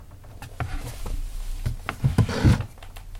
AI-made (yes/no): no